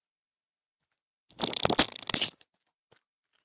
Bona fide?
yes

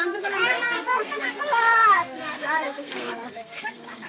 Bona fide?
no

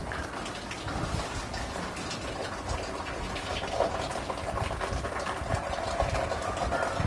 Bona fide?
yes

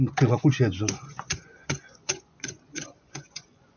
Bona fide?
no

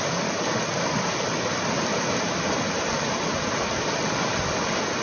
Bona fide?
yes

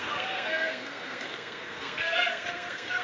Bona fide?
no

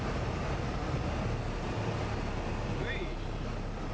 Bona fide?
yes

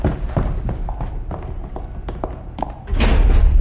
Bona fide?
yes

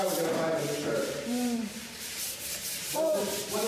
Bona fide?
no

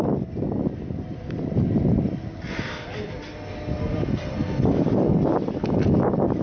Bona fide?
yes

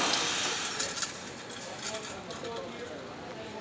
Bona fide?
yes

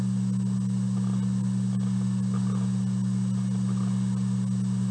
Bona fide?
yes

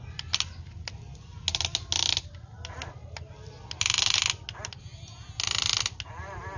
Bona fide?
yes